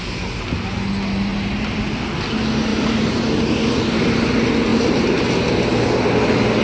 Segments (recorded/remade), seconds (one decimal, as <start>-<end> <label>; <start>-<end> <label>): 0.0-1.3 recorded; 1.3-1.8 remade; 1.8-2.7 recorded; 2.7-3.4 remade; 3.4-4.7 recorded; 4.7-5.3 remade; 5.3-6.6 recorded

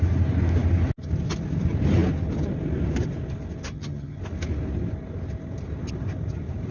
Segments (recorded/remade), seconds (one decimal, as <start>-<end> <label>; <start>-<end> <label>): 0.0-3.7 recorded; 3.7-4.2 remade; 4.2-6.7 recorded